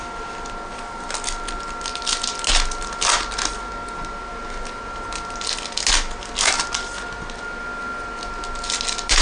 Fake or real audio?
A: real